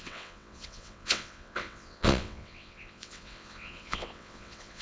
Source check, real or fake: fake